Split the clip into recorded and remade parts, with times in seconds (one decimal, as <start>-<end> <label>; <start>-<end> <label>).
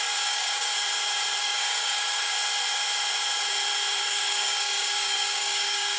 0.0-0.7 remade; 0.7-1.4 recorded; 1.4-2.3 remade; 2.3-4.0 recorded; 4.0-6.0 remade